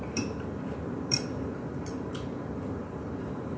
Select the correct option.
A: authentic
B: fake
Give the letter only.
B